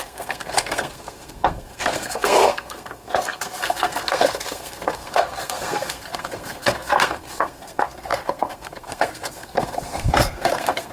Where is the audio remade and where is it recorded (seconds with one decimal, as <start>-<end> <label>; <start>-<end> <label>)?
0.0-10.9 remade